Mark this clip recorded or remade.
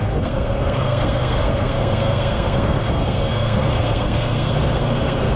remade